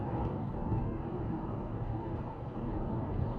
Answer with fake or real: fake